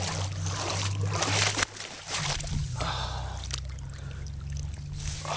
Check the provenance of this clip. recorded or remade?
recorded